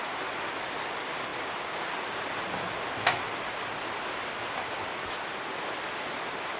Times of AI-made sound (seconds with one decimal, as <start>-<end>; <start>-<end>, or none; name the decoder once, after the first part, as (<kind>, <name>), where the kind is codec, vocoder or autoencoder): none